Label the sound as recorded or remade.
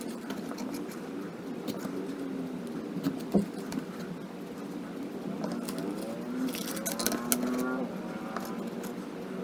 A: recorded